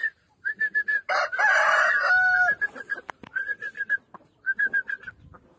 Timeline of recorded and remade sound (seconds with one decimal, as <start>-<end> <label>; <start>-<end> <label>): 0.0-3.4 remade; 3.4-5.6 recorded